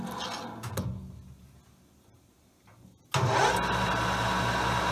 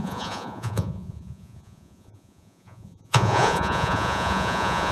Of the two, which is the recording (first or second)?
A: first